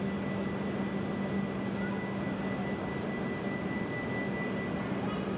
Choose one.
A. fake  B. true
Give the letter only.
B